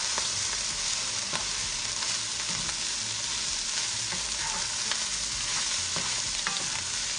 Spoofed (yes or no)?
no